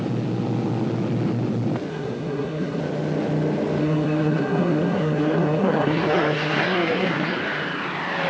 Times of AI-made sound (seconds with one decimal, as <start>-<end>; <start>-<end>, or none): 1.9-2.8; 3.8-7.4